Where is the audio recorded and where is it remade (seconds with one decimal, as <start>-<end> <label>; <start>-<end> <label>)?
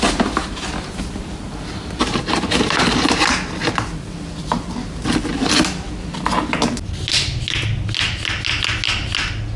0.0-9.6 recorded